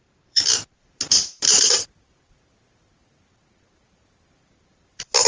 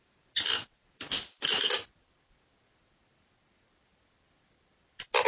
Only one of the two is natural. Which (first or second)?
second